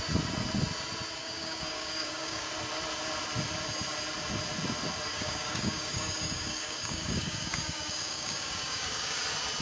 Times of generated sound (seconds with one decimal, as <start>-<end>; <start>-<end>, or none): 1.2-2.5; 5.1-9.2